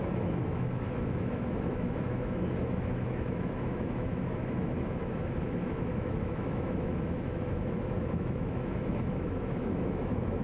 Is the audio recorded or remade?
remade